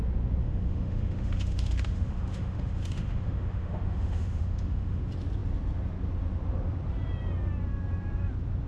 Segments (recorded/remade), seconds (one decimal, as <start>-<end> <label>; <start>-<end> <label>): 0.0-0.4 recorded; 0.4-5.0 remade; 5.0-8.7 recorded